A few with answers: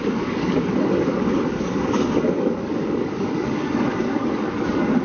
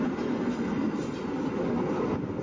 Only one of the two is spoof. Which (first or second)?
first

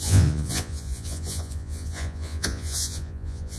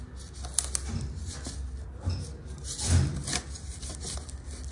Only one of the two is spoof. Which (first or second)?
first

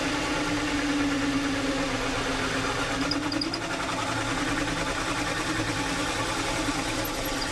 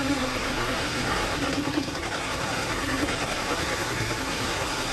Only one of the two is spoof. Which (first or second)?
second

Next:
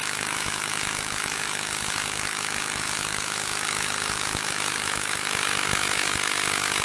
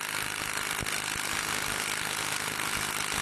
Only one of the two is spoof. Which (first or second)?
first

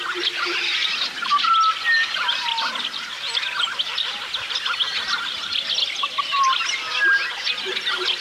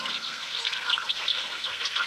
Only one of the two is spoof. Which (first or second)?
second